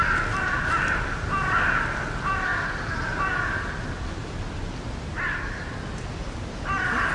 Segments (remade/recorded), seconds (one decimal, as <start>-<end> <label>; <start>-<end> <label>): 0.0-7.1 recorded